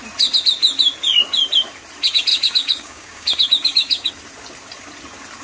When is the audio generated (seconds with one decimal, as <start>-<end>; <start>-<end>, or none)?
2.3-4.1